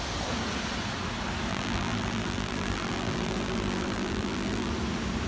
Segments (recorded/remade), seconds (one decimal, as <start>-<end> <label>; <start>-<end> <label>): 0.0-1.5 recorded; 1.5-4.7 remade; 4.7-5.3 recorded